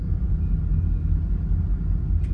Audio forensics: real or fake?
real